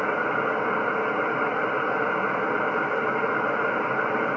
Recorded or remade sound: recorded